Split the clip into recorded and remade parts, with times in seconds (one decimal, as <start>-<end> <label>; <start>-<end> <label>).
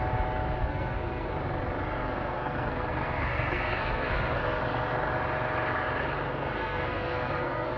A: 0.0-0.6 recorded; 0.6-1.3 remade; 1.3-2.0 recorded; 2.0-4.6 remade; 4.6-6.6 recorded; 6.6-7.8 remade